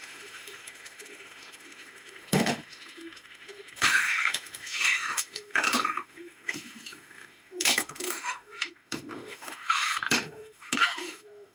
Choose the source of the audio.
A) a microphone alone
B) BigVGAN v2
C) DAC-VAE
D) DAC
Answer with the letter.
C